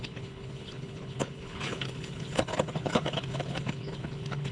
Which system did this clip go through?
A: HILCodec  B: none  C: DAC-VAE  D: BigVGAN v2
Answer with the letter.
A